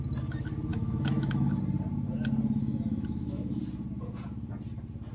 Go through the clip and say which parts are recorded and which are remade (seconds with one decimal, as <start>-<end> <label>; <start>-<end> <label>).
0.0-0.7 recorded; 0.7-1.6 remade; 1.6-2.6 recorded; 2.6-3.6 remade; 3.6-5.1 recorded